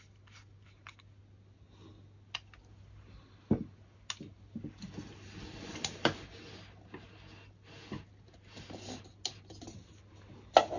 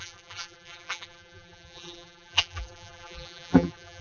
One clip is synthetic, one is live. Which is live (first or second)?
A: first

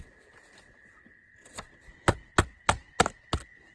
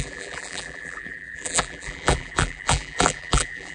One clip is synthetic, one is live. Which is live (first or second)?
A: first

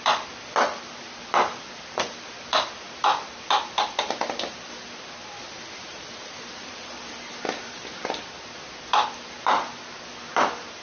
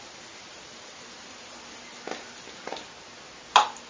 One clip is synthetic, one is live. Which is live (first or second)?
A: second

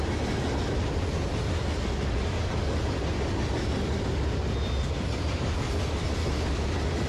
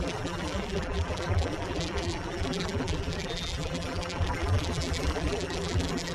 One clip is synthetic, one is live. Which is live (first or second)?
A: first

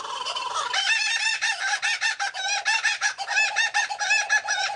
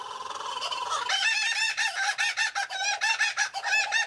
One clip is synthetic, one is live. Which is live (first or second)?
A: second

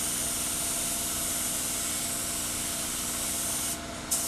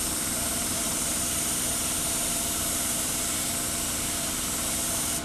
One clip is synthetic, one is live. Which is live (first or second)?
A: first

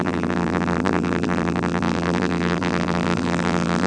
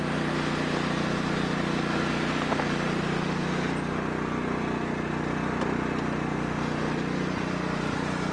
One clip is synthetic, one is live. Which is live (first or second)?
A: second